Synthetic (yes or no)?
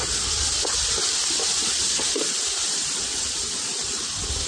no